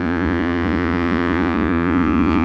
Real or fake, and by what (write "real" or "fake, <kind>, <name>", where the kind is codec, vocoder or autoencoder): fake, vocoder, Vocos